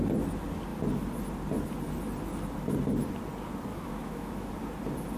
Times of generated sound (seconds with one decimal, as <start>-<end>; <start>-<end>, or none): 3.7-4.5

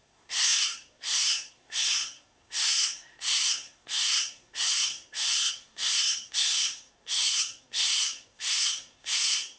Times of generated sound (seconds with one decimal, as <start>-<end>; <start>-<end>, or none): 0.0-9.6

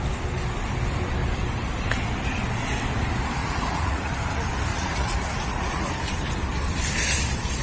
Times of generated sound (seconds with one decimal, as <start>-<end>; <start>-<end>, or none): 3.4-4.1; 4.7-5.9

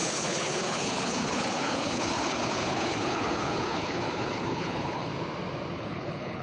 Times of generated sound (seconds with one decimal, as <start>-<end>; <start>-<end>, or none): 0.0-5.1; 5.7-6.4

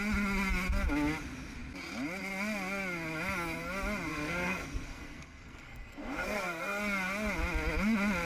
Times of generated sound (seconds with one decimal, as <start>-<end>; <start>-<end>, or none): 4.1-6.8

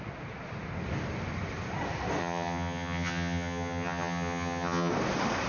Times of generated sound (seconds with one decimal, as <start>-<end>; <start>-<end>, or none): 2.2-4.9